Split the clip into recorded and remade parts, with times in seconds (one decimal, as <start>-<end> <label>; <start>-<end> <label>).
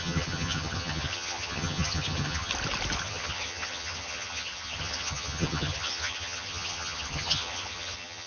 0.0-2.5 remade; 2.5-3.0 recorded; 3.0-8.3 remade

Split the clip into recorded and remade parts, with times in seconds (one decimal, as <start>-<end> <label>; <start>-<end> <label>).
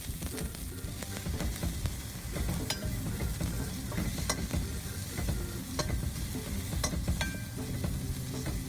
0.0-8.7 recorded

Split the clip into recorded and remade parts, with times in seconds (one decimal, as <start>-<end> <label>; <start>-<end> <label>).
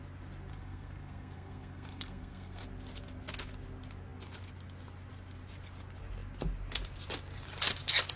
0.0-0.5 recorded; 0.5-2.6 remade; 2.6-8.2 recorded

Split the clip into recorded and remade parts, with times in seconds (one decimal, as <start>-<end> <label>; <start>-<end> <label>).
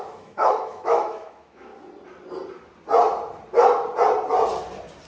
0.0-1.7 remade; 1.7-5.1 recorded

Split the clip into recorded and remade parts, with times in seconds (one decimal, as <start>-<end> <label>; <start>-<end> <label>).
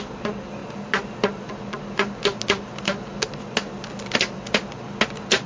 0.0-5.5 recorded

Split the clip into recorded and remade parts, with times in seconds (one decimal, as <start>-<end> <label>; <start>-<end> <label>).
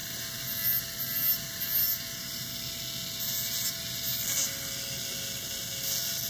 0.0-6.3 recorded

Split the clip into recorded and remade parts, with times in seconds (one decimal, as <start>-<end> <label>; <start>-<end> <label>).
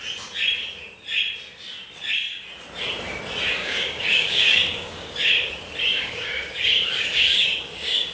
0.0-3.6 recorded; 3.6-5.5 remade; 5.5-5.9 recorded; 5.9-8.1 remade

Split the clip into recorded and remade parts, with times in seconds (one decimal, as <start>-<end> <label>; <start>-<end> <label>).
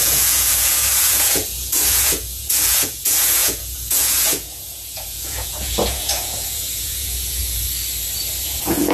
0.0-7.4 remade; 7.4-8.4 recorded; 8.4-8.9 remade